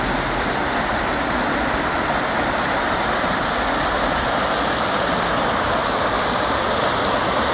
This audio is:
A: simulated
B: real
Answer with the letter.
B